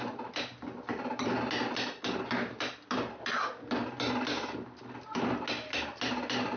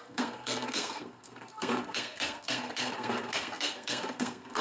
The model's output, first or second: second